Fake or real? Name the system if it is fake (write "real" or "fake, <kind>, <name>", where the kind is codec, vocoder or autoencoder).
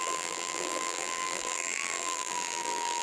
fake, vocoder, BigVGAN v2